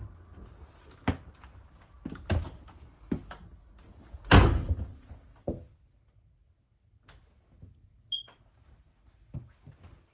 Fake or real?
real